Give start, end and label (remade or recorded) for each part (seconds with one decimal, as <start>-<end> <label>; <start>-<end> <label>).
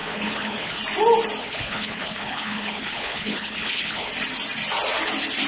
0.0-0.8 remade; 0.8-1.4 recorded; 1.4-4.1 remade; 4.1-5.5 recorded